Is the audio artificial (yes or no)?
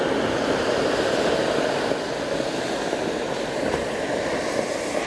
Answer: no